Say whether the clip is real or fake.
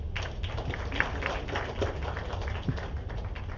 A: real